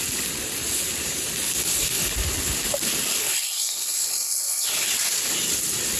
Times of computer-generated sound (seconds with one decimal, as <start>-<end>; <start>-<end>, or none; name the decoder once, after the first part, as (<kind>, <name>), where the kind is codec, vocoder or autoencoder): 1.6-2.1 (codec, HILCodec); 3.1-4.9